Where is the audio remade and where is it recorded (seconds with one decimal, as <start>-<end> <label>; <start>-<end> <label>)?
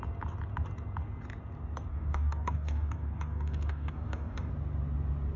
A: 0.0-1.9 recorded; 1.9-4.5 remade; 4.5-5.4 recorded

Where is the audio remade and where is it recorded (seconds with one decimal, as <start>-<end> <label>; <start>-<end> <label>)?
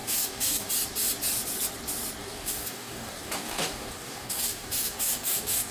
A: 0.0-0.7 remade; 0.7-2.2 recorded; 2.2-5.7 remade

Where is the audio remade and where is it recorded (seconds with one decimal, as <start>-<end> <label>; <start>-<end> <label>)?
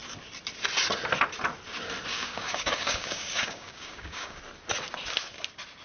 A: 0.0-2.1 recorded; 2.1-4.4 remade; 4.4-5.8 recorded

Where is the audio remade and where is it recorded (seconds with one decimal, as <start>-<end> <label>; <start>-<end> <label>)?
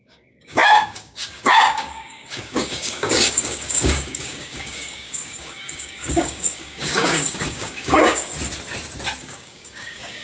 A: 0.0-8.3 remade; 8.3-9.2 recorded; 9.2-10.2 remade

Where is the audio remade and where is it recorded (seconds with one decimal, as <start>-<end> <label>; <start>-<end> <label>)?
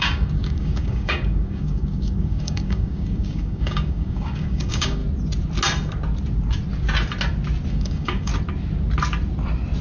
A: 0.0-5.0 remade; 5.0-7.7 recorded; 7.7-8.3 remade; 8.3-9.8 recorded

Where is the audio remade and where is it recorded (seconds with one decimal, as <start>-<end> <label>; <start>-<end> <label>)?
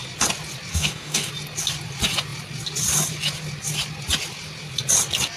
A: 0.0-0.7 recorded; 0.7-1.3 remade; 1.3-5.4 recorded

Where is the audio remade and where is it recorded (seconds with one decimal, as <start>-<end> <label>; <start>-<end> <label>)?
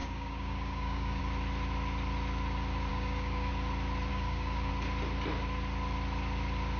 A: 0.0-1.2 remade; 1.2-2.9 recorded; 2.9-3.5 remade; 3.5-4.1 recorded; 4.1-4.7 remade; 4.7-6.8 recorded